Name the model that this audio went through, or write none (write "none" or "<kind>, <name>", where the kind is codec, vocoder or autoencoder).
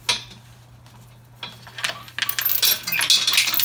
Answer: none